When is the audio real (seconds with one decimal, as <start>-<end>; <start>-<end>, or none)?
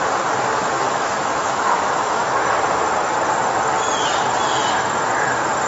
0.0-0.6; 2.2-5.7